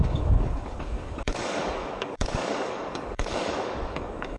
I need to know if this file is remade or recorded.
remade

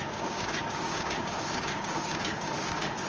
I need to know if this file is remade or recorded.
remade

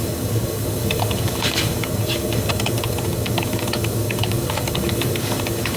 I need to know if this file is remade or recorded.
remade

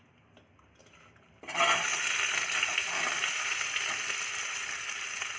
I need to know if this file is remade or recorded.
recorded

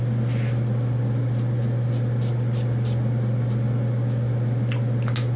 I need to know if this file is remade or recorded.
recorded